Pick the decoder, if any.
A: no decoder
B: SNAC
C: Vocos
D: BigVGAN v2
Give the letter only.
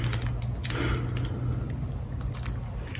A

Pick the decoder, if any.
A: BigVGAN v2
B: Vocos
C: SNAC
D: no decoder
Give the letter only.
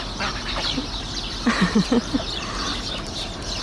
A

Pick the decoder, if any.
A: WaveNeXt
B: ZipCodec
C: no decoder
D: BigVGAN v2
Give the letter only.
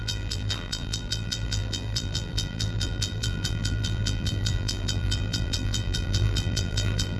D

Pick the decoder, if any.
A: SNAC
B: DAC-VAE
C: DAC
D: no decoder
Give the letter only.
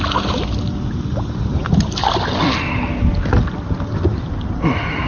D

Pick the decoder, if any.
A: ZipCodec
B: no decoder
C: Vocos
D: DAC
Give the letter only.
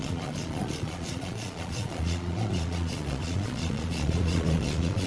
C